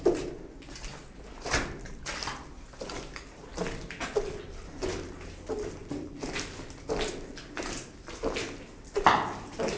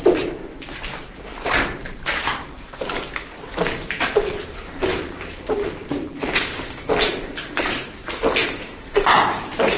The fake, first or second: second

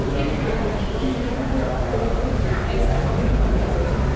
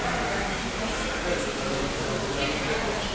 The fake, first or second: first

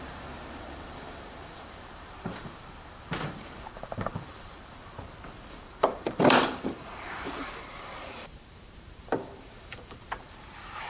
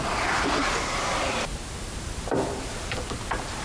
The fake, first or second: first